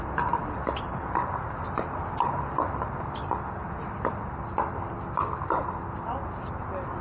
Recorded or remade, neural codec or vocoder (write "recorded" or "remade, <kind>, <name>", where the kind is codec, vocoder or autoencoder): recorded